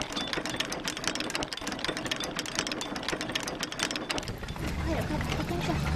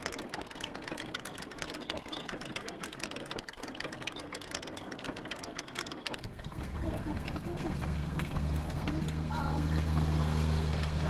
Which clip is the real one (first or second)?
first